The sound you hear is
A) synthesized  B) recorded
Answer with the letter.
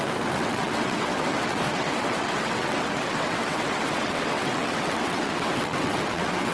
A